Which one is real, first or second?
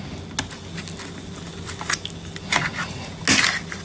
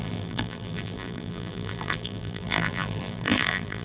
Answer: first